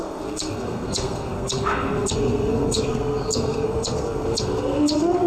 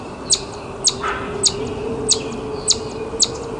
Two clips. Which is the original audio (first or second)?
second